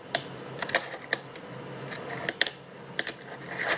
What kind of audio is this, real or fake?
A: real